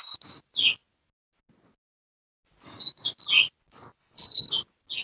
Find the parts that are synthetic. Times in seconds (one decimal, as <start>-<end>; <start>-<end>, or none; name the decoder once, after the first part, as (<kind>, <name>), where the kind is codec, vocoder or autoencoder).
4.0-4.5 (codec, HILCodec)